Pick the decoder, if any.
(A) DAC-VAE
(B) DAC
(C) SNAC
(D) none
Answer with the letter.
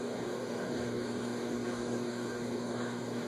B